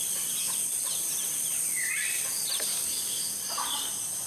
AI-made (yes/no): yes